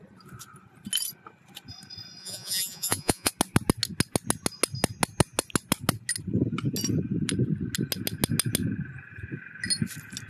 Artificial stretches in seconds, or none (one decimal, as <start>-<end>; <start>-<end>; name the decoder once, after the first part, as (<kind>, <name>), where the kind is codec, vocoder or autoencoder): 2.2-3.3 (vocoder, Vocos)